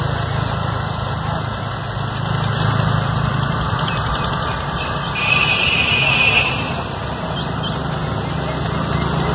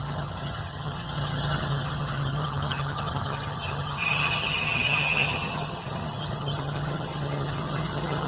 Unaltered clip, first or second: first